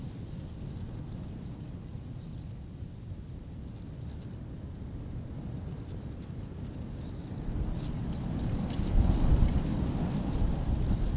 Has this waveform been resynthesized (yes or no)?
no